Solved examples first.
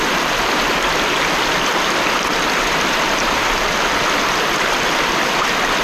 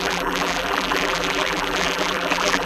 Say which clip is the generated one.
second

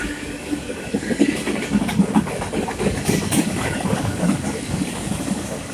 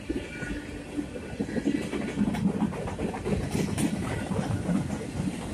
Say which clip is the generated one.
first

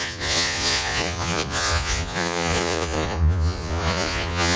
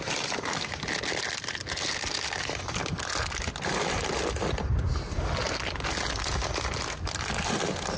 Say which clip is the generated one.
first